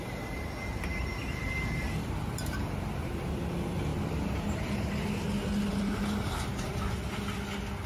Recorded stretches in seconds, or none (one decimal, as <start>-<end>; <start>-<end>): 0.0-0.9; 3.3-3.9; 4.9-5.7; 6.9-7.9